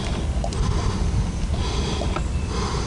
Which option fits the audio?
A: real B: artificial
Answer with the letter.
A